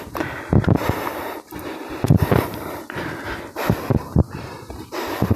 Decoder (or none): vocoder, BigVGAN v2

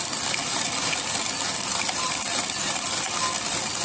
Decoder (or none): vocoder, BigVGAN v2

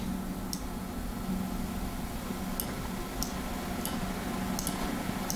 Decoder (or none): none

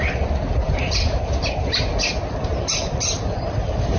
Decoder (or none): none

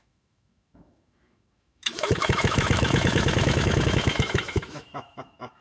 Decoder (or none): autoencoder, DAC-VAE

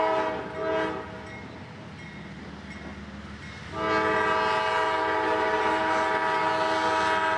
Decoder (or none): none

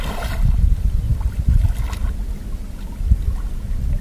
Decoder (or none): none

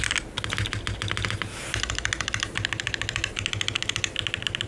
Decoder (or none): none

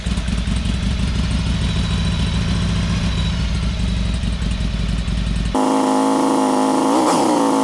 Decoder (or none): none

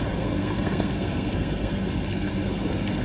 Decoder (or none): codec, SNAC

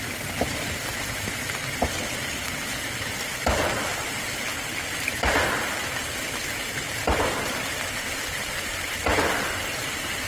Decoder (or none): none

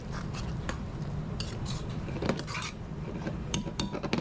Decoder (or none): vocoder, BigVGAN v2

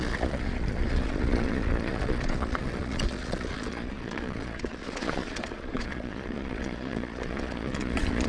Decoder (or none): vocoder, Vocos